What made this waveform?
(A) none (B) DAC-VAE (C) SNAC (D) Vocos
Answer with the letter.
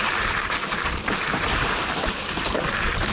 A